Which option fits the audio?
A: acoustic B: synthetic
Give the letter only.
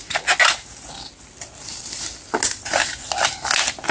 A